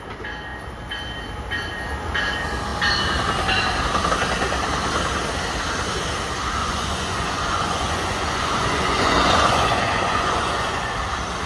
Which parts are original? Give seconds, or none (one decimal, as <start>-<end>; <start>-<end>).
0.0-6.6; 10.9-11.5